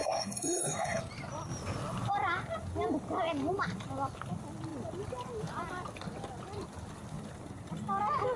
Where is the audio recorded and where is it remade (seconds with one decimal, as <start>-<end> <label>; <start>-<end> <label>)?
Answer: 0.0-1.0 remade; 1.0-8.4 recorded